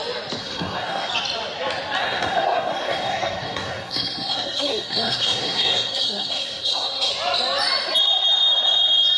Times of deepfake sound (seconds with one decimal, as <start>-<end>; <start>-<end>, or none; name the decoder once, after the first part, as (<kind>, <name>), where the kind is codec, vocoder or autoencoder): 0.4-1.1 (codec, SNAC); 2.0-7.1